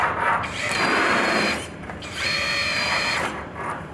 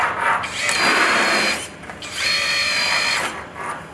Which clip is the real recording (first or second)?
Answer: second